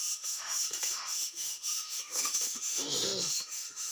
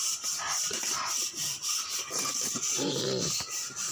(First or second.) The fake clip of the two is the first